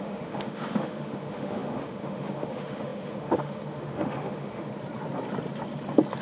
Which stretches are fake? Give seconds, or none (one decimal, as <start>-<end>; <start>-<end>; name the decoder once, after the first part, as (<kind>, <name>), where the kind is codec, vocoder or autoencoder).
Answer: 0.0-4.7 (autoencoder, DAC-VAE)